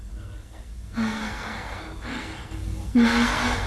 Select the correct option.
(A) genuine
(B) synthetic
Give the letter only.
B